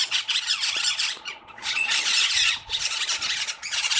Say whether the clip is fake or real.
fake